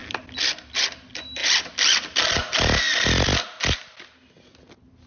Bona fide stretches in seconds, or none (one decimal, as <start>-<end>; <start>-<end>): 0.0-5.1